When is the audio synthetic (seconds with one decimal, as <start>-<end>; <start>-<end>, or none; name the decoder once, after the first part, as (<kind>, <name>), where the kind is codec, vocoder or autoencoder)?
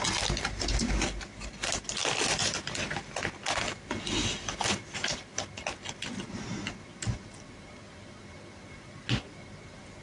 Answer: none